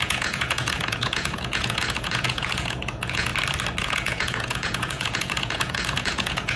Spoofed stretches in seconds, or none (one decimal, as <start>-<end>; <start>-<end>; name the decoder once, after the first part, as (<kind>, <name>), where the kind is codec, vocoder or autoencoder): 0.0-3.3 (vocoder, Vocos); 3.8-6.6